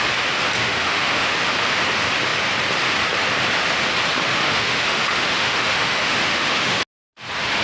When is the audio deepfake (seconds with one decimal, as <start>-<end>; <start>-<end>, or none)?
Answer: 0.6-1.5; 4.3-6.8